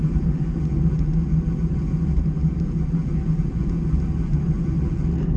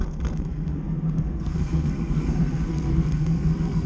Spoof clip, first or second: second